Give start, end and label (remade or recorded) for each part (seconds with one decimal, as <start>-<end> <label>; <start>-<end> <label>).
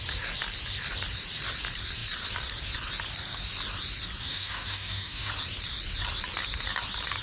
0.0-4.2 recorded; 4.2-5.3 remade; 5.3-7.2 recorded